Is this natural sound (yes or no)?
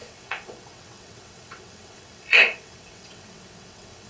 no